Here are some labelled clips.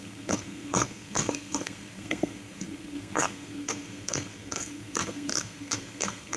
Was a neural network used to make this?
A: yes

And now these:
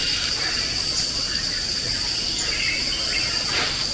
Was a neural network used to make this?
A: no